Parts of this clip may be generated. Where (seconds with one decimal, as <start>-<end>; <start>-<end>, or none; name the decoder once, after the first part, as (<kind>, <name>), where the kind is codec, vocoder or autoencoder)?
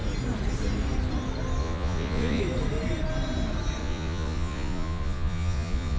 1.6-2.4 (vocoder, Vocos); 3.8-6.0